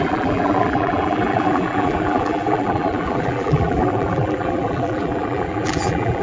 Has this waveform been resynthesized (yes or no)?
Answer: yes